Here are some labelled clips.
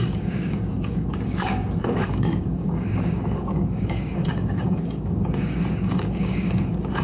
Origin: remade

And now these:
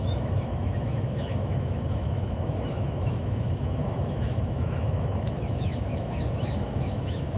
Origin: remade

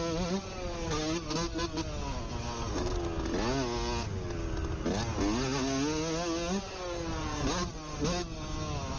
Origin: recorded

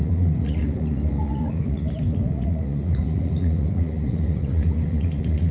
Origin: remade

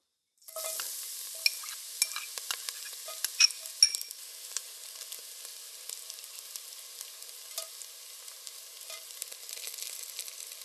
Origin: recorded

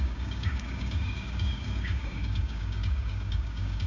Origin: remade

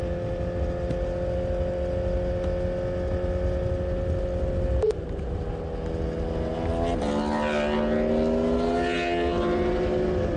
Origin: recorded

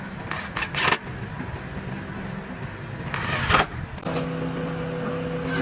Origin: recorded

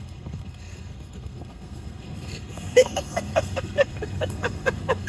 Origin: remade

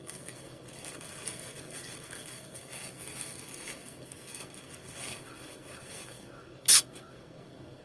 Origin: remade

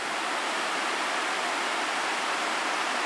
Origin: recorded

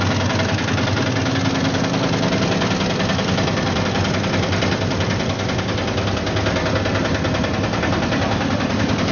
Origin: recorded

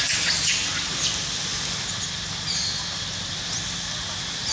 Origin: recorded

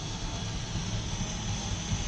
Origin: recorded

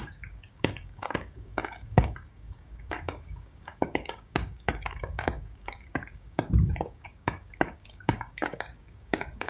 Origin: remade